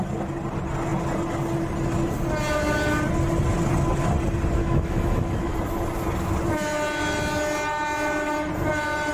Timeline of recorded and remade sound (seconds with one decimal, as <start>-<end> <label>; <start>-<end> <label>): 0.0-4.6 recorded; 4.6-5.5 remade; 5.5-9.1 recorded

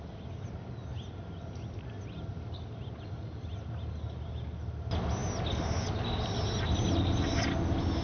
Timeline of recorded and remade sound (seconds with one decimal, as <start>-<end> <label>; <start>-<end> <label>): 0.0-8.0 recorded